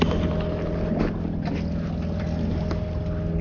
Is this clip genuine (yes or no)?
yes